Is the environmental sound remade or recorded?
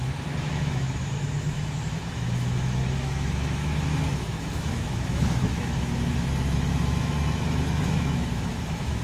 remade